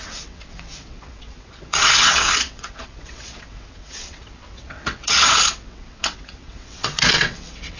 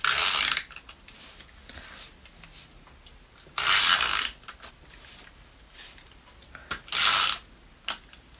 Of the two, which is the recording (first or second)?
second